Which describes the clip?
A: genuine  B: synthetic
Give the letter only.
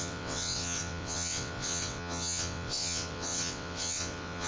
B